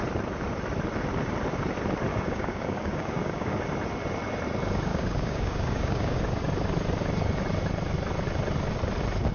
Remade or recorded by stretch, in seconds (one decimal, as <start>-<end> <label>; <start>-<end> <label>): 0.0-2.1 recorded; 2.1-3.6 remade; 3.6-4.9 recorded; 4.9-6.2 remade; 6.2-9.3 recorded